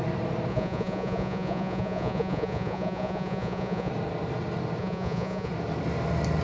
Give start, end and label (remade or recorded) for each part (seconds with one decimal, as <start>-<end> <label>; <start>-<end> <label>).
0.0-0.5 recorded; 0.5-3.9 remade; 3.9-4.8 recorded; 4.8-5.5 remade; 5.5-6.4 recorded